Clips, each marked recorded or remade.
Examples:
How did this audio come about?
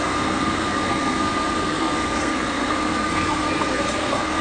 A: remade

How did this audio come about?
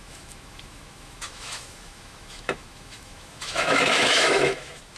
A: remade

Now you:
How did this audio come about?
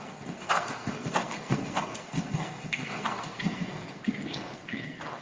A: remade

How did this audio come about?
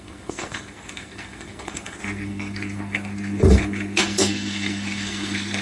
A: remade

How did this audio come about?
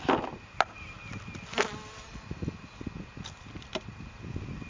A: recorded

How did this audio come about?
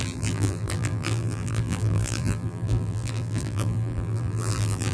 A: remade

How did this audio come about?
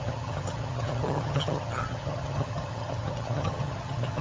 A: remade